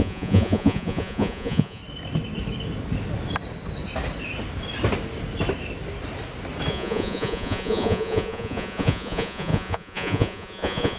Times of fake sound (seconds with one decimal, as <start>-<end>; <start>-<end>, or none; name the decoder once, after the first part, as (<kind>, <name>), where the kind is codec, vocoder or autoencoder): 0.0-1.8 (vocoder, Vocos); 6.7-11.0